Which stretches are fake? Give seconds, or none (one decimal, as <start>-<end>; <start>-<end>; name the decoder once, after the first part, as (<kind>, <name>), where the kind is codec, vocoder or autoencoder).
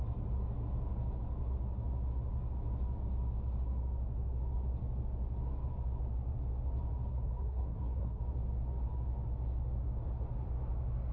7.1-8.2 (codec, SNAC)